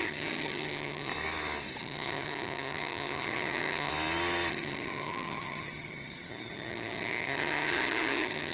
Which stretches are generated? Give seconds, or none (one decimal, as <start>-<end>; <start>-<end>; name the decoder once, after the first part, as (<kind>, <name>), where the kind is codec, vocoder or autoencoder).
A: 0.0-1.1 (vocoder, HiFi-GAN); 1.8-3.9; 4.5-8.5